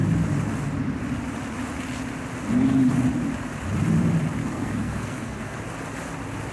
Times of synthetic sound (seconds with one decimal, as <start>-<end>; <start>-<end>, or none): 4.4-5.6